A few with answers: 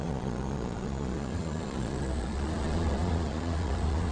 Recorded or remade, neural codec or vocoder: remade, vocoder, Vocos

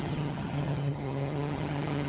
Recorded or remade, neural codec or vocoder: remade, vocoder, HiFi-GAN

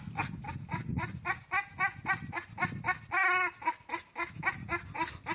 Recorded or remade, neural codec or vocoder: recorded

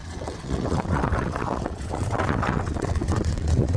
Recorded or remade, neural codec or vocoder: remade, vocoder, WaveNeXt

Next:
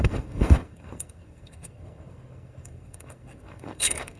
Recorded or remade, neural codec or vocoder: remade, codec, SNAC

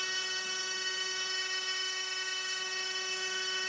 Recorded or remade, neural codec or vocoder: remade, codec, HILCodec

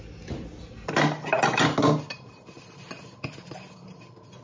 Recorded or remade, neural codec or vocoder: recorded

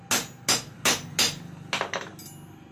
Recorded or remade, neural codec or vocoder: recorded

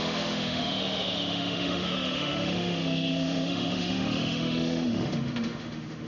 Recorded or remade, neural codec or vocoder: remade, autoencoder, DAC-VAE